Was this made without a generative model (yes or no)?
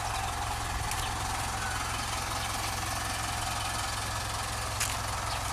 yes